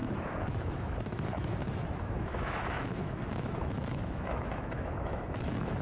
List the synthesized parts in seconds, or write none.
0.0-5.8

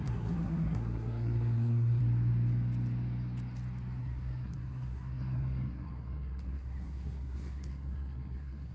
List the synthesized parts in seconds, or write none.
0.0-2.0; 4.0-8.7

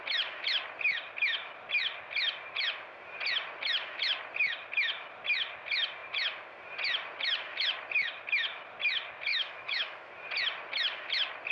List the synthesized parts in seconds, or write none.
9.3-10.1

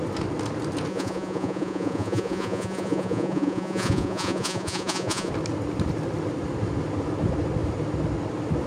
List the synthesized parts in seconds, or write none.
0.9-5.3

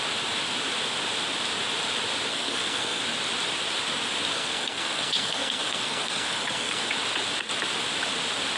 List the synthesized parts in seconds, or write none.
2.3-3.0; 4.3-6.9